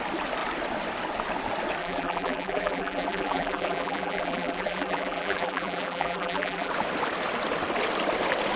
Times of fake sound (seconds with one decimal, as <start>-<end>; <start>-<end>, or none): 1.8-6.7